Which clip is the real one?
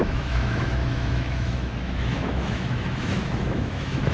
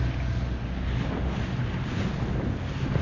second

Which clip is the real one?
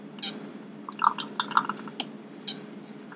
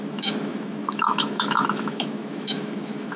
first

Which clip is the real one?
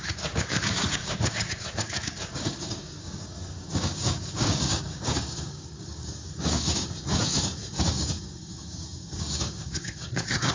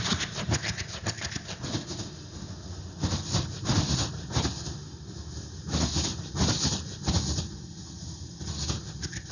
second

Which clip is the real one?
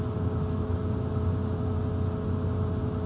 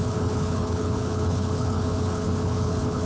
first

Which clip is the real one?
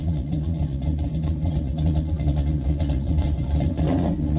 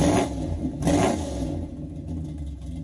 second